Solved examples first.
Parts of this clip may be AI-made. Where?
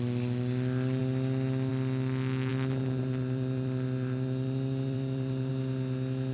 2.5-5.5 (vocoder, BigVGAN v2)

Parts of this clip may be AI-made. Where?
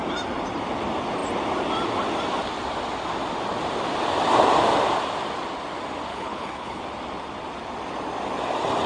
6.1-6.8 (codec, HILCodec)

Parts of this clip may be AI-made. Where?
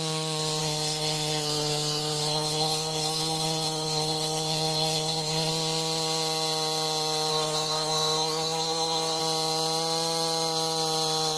0.6-5.5 (codec, SNAC); 7.3-9.2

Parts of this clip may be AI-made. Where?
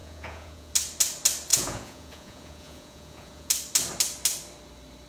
0.0-0.7 (vocoder, Vocos); 1.5-3.5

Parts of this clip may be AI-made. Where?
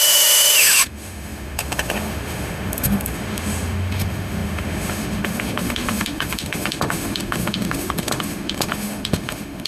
0.0-9.7 (autoencoder, DAC-VAE)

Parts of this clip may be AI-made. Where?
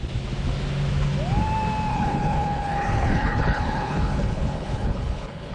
1.9-5.5 (codec, HILCodec)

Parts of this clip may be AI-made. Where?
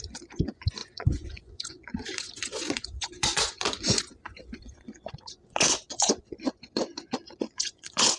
0.0-8.2 (vocoder, Vocos)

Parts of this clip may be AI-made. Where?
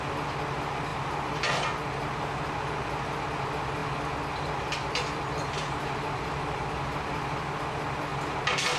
none